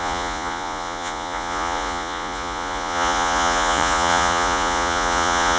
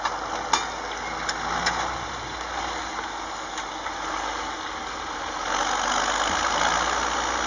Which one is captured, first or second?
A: second